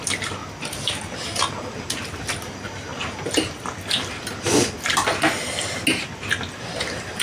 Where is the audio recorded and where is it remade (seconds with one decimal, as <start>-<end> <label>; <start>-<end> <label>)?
0.0-7.2 recorded